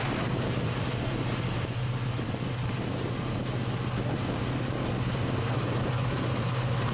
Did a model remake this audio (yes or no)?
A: no